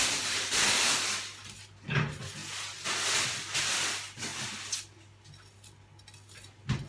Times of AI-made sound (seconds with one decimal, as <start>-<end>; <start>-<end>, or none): none